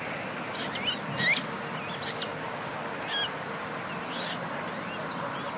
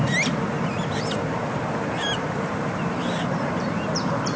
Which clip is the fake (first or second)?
second